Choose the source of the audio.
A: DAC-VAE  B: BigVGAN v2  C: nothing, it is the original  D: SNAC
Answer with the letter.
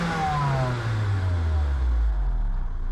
C